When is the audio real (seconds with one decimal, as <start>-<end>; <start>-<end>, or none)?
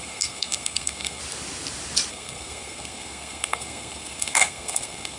1.2-2.1